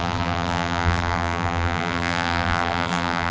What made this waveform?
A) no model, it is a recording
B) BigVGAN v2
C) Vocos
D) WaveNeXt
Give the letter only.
B